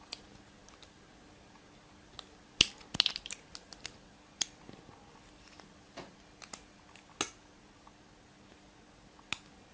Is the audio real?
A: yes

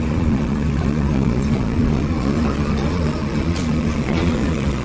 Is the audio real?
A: no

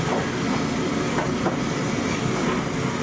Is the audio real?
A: yes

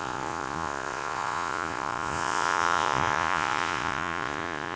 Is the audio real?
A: no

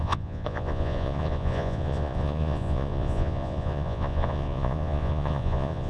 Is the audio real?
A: no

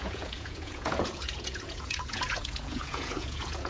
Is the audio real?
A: no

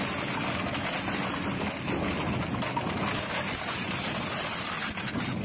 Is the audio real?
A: yes